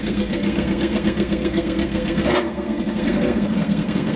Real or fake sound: fake